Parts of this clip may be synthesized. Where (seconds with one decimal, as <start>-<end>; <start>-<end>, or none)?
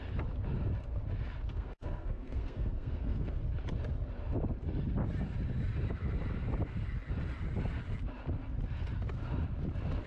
1.5-3.4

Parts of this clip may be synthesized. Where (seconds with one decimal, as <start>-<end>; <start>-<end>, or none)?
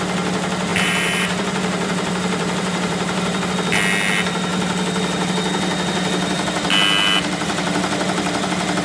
0.7-3.5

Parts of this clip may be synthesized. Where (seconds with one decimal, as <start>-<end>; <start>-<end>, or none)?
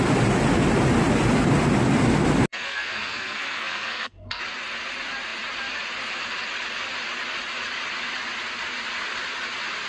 2.5-4.4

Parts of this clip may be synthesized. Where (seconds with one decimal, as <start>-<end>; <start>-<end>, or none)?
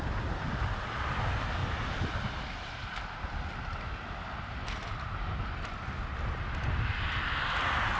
none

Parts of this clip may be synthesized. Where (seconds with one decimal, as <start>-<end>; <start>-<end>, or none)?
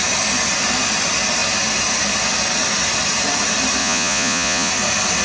3.8-4.7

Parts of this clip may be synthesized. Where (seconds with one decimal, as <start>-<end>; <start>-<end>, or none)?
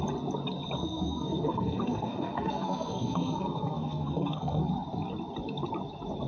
0.9-4.7